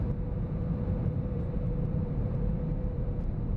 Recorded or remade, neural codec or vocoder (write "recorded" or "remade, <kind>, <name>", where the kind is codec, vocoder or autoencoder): remade, vocoder, BigVGAN v2